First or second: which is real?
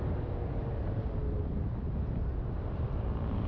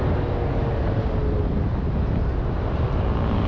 second